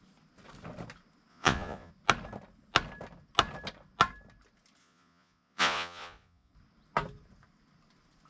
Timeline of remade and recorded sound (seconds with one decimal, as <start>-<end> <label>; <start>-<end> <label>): 0.0-1.3 recorded; 1.3-1.9 remade; 1.9-4.8 recorded; 4.8-6.5 remade; 6.5-8.3 recorded